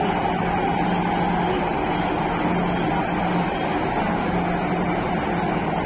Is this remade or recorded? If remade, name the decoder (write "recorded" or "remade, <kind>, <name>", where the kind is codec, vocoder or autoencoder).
recorded